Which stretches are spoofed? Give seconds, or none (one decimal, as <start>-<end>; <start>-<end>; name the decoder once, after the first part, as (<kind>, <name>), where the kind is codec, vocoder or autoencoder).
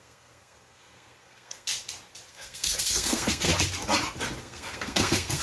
0.0-1.7 (codec, SNAC); 2.3-3.5; 4.4-5.4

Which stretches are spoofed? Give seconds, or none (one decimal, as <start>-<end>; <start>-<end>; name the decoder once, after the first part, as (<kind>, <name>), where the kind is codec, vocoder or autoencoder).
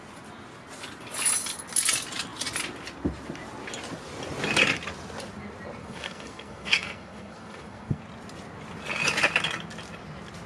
5.8-8.0 (codec, SNAC)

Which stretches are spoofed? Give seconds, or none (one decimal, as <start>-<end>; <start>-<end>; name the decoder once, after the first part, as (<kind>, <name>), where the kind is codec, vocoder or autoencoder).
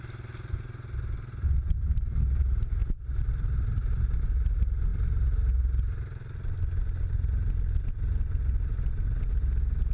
none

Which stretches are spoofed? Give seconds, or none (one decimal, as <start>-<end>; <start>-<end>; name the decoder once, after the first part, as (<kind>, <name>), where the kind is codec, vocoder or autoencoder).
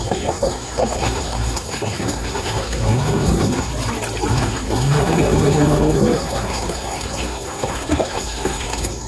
0.0-3.7 (codec, SNAC); 4.3-9.1